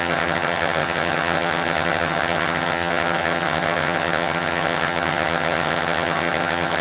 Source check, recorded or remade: remade